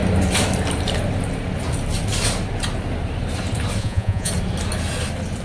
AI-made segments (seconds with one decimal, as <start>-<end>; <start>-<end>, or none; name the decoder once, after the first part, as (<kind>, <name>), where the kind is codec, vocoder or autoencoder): 3.8-4.3 (vocoder, Vocos)